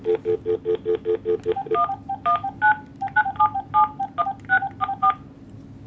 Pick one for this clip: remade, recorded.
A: recorded